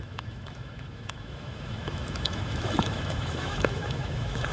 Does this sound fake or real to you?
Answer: fake